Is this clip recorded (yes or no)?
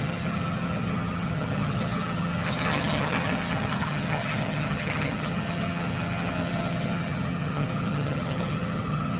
no